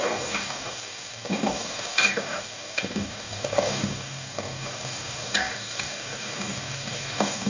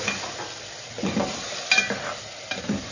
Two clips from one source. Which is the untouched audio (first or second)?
second